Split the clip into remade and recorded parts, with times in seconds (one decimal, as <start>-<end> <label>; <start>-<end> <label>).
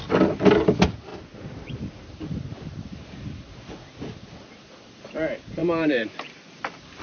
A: 0.0-5.6 recorded; 5.6-7.0 remade